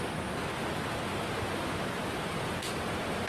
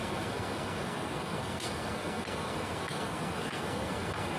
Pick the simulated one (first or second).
second